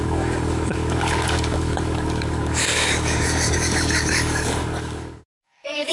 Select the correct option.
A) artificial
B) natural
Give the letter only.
A